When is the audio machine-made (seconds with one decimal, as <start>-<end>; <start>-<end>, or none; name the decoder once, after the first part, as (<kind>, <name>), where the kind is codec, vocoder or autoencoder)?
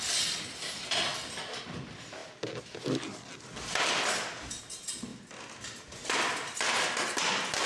1.1-1.6 (vocoder, BigVGAN v2)